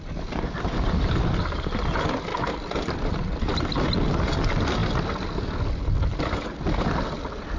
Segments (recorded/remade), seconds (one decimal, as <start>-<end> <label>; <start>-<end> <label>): 0.0-2.3 recorded; 2.3-3.1 remade; 3.1-7.6 recorded